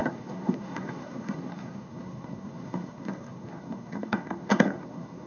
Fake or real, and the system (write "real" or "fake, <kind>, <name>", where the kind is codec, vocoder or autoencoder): fake, codec, SNAC